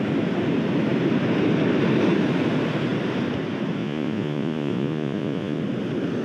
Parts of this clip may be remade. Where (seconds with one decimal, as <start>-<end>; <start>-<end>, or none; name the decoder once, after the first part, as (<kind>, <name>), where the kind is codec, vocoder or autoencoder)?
3.8-5.6 (vocoder, Vocos)